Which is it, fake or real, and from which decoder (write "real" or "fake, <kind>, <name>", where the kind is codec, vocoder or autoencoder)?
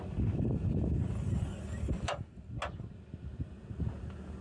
real